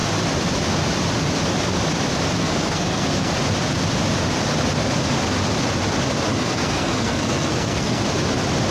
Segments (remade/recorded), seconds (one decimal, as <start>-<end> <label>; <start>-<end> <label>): 0.0-2.4 recorded; 2.4-3.3 remade; 3.3-6.3 recorded; 6.3-8.0 remade; 8.0-8.7 recorded